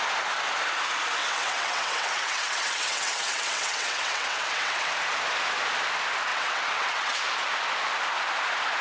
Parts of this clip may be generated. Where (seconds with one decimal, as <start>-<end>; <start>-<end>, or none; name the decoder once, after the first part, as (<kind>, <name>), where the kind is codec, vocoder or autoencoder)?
1.2-4.9 (vocoder, WaveNeXt); 6.3-7.2